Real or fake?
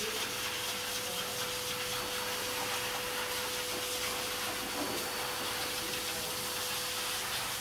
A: real